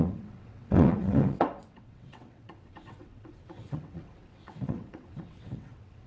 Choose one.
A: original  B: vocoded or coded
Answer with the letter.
B